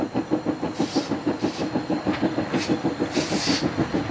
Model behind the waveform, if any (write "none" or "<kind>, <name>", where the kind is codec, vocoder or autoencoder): none